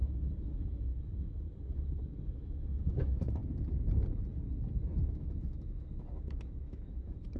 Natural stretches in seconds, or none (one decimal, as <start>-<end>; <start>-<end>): 0.9-2.3; 3.4-5.1